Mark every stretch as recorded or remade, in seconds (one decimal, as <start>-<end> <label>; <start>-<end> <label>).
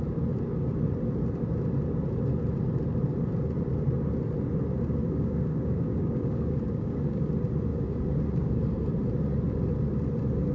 0.0-5.0 recorded; 5.0-7.3 remade; 7.3-7.7 recorded; 7.7-8.6 remade; 8.6-10.5 recorded